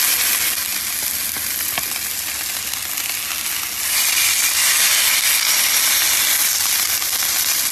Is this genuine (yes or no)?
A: yes